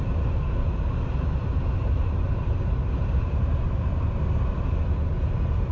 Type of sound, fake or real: fake